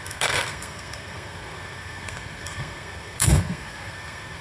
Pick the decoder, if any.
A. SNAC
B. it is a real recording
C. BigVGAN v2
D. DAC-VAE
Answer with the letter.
A